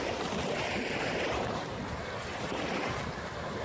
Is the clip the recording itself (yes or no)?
no